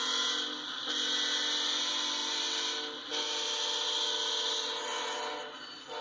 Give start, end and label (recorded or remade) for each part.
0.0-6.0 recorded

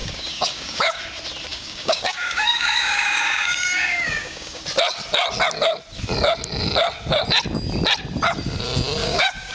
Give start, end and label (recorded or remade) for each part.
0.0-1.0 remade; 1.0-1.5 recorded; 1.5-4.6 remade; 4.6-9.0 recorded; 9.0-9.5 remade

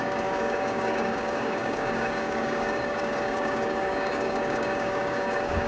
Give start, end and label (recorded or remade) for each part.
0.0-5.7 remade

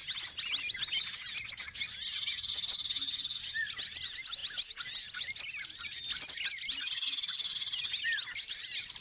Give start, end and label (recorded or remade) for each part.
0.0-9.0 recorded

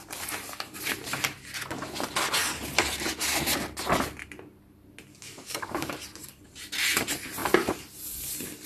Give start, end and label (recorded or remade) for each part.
0.0-5.1 recorded; 5.1-5.9 remade; 5.9-8.7 recorded